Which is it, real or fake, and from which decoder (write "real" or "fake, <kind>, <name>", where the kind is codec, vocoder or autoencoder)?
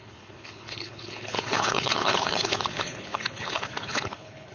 fake, codec, HILCodec